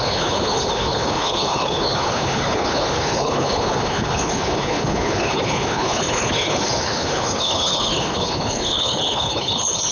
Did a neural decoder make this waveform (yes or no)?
yes